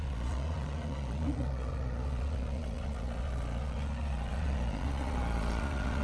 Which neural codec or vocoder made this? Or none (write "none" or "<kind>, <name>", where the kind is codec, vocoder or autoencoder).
vocoder, Vocos